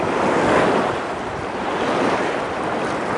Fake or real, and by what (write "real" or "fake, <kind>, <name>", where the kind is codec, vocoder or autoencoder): real